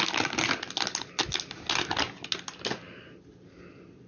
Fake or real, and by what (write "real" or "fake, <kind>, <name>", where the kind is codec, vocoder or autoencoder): real